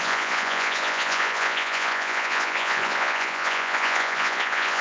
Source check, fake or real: fake